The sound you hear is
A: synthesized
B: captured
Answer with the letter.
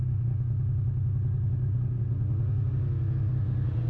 B